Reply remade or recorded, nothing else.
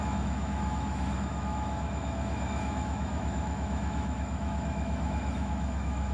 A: remade